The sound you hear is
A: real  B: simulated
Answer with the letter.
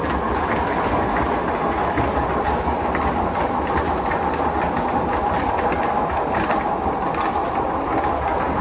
A